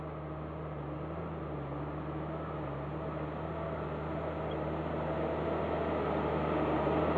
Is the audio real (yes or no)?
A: yes